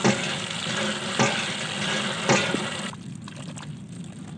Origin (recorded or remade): recorded